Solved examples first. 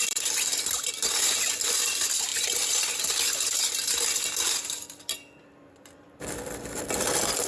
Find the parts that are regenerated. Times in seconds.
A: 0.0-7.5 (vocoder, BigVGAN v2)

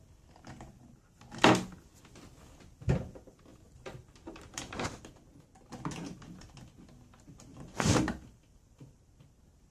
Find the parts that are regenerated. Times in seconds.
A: 3.5-4.6 (vocoder, BigVGAN v2); 7.5-9.1